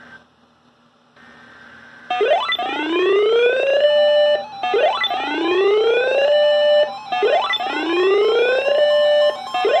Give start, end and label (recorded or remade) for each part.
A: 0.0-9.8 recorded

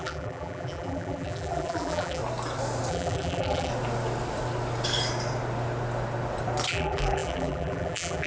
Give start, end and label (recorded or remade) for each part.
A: 0.0-2.2 remade; 2.2-2.9 recorded; 2.9-3.7 remade; 3.7-6.7 recorded; 6.7-8.3 remade

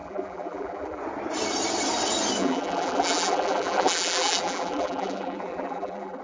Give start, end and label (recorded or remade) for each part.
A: 0.0-1.0 remade; 1.0-2.4 recorded; 2.4-6.2 remade